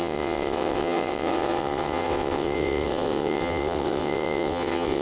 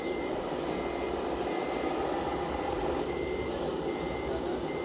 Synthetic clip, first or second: first